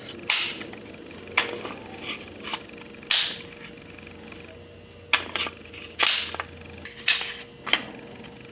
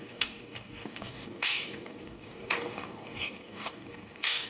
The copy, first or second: second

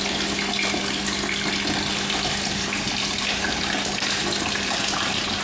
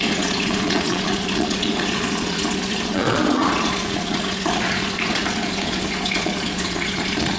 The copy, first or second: second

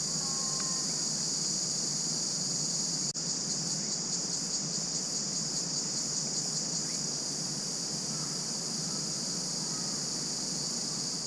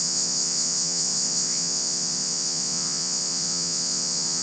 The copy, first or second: second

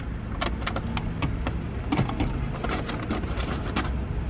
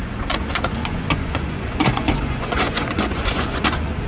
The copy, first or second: second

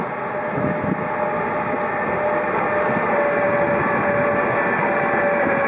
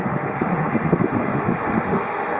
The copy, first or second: second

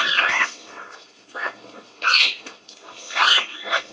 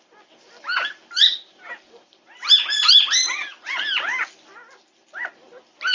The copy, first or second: first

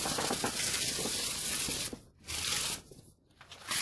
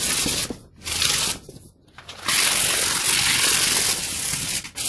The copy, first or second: first